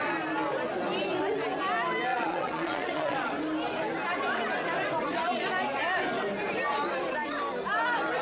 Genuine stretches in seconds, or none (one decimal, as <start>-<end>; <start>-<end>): 0.0-2.1; 3.3-8.2